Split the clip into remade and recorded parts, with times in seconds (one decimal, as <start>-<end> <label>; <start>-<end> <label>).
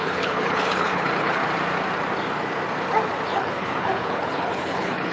0.0-1.4 remade; 1.4-3.3 recorded; 3.3-5.1 remade